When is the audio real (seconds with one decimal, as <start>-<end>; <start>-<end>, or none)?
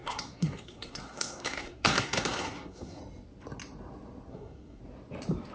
3.0-4.3; 4.8-5.5